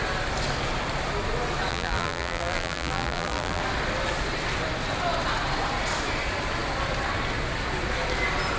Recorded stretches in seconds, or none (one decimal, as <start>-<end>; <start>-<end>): 0.0-1.7; 3.6-8.6